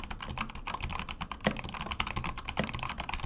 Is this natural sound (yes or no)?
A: yes